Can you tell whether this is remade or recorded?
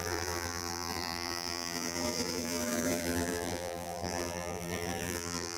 remade